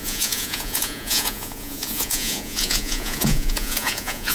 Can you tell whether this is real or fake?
fake